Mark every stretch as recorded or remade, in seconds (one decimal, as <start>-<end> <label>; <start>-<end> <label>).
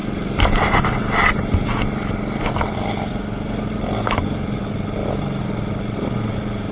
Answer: 0.0-6.7 recorded